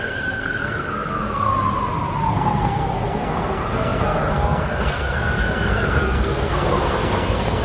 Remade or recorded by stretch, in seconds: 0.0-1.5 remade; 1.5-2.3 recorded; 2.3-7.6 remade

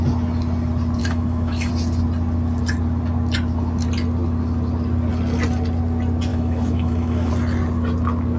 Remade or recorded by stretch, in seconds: 0.0-1.0 recorded; 1.0-1.7 remade; 1.7-6.3 recorded; 6.3-7.3 remade; 7.3-8.4 recorded

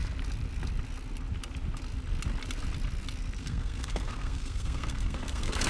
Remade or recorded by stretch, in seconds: 0.0-3.4 recorded; 3.4-5.7 remade